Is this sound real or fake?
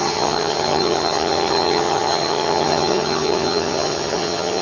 fake